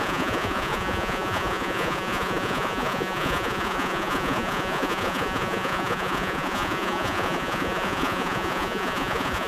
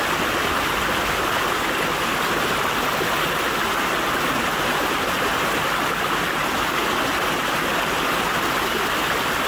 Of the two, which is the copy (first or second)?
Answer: first